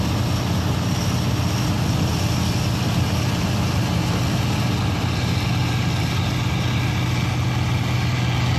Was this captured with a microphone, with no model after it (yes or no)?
yes